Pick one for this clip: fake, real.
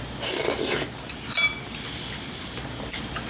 real